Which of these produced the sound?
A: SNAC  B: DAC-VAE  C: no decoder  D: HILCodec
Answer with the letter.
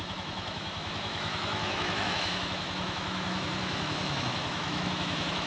B